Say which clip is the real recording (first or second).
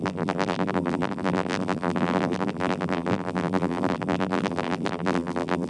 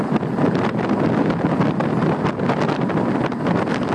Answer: second